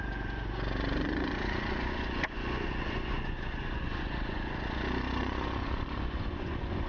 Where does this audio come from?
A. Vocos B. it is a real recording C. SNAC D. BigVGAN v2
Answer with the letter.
A